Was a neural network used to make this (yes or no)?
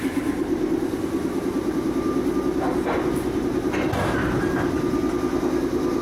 no